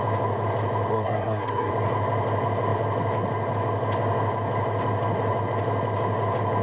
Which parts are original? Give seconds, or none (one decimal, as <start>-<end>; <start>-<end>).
0.0-0.9; 1.7-6.6